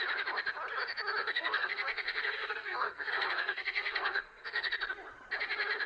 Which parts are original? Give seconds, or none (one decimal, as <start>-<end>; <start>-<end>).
0.0-1.2; 4.7-5.9